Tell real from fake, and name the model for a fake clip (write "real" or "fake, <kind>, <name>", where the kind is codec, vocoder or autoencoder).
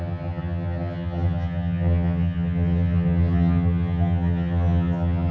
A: fake, vocoder, HiFi-GAN